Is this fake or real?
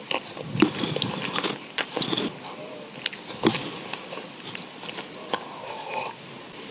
real